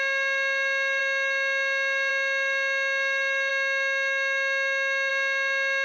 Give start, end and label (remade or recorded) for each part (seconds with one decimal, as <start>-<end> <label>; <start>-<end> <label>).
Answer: 0.0-3.5 recorded; 3.5-5.1 remade; 5.1-5.8 recorded